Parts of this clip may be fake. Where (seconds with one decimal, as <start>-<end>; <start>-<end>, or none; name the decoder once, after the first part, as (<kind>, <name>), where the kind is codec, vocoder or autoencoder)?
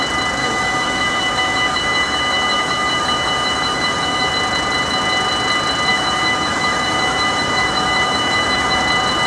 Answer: 0.4-4.3 (autoencoder, DAC-VAE); 5.9-8.8